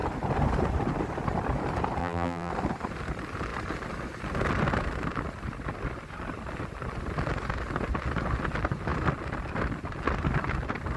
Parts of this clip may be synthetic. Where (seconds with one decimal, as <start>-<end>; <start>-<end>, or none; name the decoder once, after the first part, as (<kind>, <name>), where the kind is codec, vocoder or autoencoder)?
2.0-2.5 (vocoder, BigVGAN v2)